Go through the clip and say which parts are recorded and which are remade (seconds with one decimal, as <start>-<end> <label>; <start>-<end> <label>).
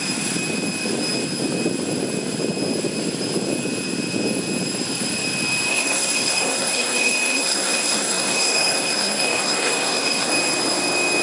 0.0-5.7 recorded; 5.7-10.3 remade; 10.3-11.2 recorded